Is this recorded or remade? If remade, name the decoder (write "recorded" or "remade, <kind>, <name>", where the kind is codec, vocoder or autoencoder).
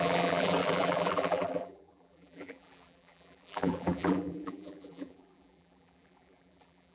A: remade, vocoder, BigVGAN v2